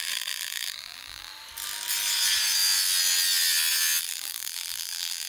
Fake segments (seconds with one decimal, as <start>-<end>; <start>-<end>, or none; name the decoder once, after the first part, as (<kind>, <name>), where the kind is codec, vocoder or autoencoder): 0.0-1.3 (vocoder, BigVGAN v2); 4.0-5.3